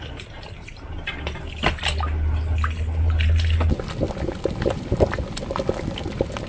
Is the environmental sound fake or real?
real